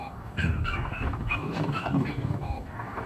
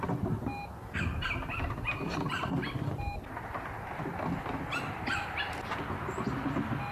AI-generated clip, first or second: first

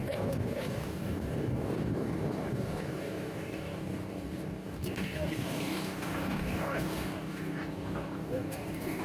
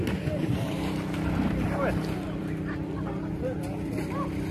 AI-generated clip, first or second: first